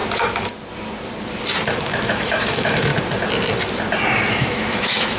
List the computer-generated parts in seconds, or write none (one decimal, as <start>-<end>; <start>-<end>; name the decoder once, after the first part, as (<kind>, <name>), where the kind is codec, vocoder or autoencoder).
1.8-2.9 (autoencoder, DAC-VAE); 4.3-5.2